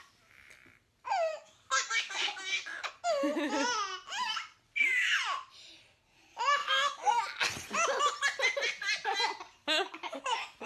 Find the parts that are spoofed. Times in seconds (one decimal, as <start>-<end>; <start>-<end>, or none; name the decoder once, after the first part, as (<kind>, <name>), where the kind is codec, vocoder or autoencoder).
1.3-2.9 (codec, DAC); 6.6-7.2; 9.6-10.2